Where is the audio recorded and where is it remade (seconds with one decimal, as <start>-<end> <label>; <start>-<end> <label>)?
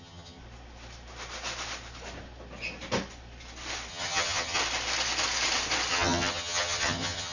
0.0-0.4 remade; 0.4-3.9 recorded; 3.9-4.6 remade; 4.6-5.9 recorded; 5.9-7.3 remade